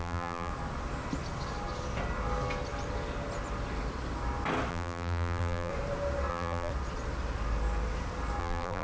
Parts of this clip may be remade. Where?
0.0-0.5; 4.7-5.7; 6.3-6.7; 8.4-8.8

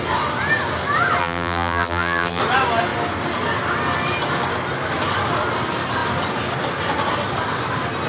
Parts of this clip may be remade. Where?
1.2-2.4